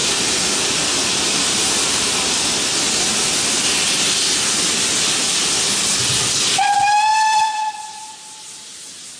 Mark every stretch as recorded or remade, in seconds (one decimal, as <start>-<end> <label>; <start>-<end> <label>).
0.0-0.6 remade; 0.6-7.1 recorded; 7.1-8.1 remade; 8.1-9.2 recorded